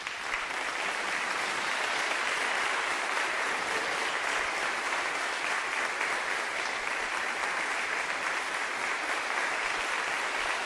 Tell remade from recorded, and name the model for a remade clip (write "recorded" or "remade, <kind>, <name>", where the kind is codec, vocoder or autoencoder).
remade, vocoder, BigVGAN v2